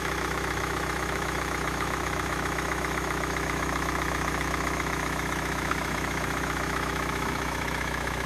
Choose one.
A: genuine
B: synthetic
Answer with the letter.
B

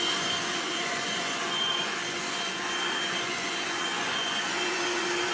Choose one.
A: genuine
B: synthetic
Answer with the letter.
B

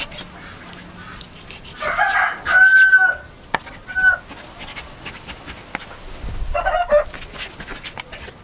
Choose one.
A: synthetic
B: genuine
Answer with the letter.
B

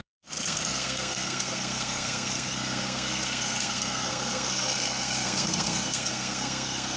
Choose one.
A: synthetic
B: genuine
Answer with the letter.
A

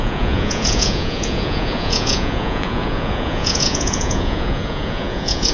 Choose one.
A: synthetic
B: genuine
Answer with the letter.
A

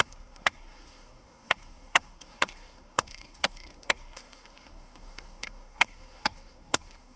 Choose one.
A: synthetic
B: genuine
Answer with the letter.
A